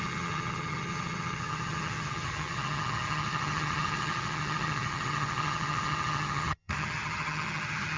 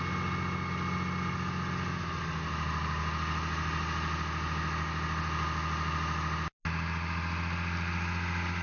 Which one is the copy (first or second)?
first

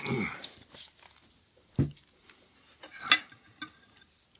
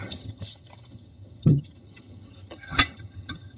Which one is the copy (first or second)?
second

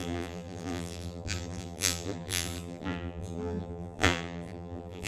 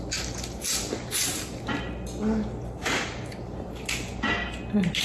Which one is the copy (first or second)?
first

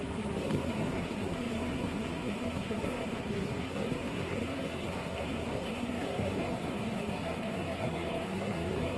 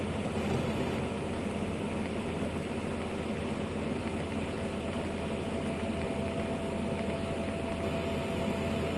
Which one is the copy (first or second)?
first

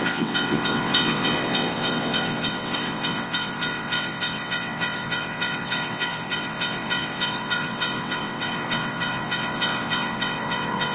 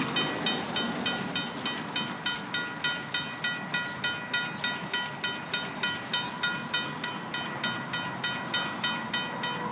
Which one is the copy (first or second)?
first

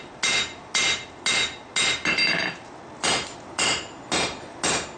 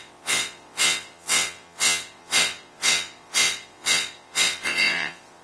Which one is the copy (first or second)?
second